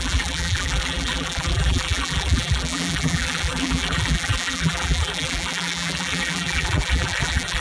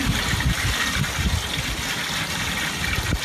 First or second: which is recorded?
second